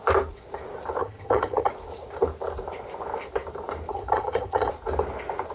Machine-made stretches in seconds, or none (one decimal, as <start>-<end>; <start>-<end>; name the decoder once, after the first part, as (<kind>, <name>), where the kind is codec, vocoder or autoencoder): 1.0-1.7 (vocoder, HiFi-GAN); 3.9-4.7